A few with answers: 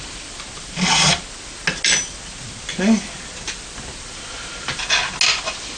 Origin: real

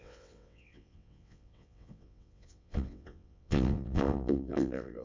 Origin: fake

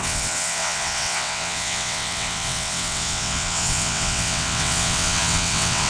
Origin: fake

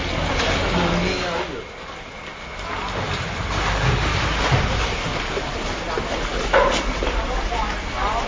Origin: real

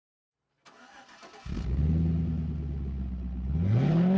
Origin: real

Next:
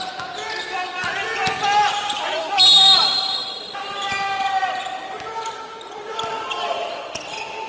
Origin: real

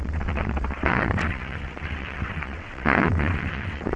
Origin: fake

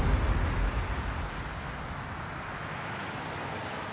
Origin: real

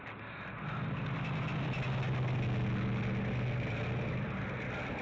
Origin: real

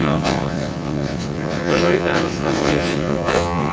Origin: fake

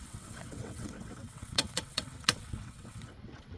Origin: fake